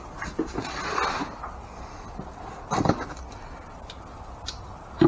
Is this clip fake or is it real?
real